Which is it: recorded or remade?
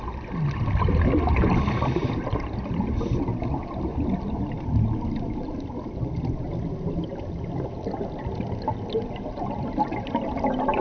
recorded